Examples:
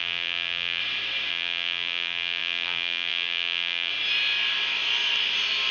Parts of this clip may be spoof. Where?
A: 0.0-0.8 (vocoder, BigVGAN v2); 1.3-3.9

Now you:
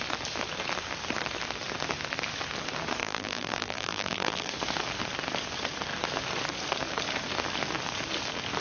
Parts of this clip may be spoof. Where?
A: 3.0-4.5 (vocoder, BigVGAN v2)

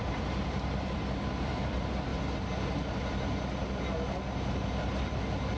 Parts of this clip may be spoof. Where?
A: 0.0-2.1 (vocoder, BigVGAN v2)

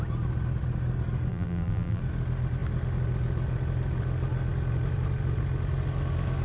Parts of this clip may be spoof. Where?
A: 1.3-2.0 (vocoder, BigVGAN v2)

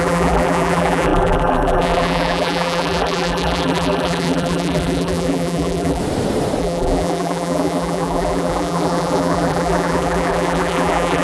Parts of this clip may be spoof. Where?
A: 0.0-6.0 (vocoder, BigVGAN v2); 6.6-11.2

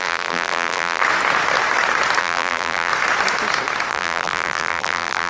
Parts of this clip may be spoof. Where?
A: 0.0-1.0 (vocoder, BigVGAN v2); 2.2-2.9; 3.9-5.3

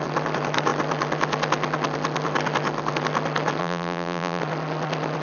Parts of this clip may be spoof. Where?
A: 3.6-4.4 (vocoder, BigVGAN v2)